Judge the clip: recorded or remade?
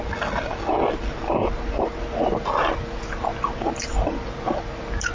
recorded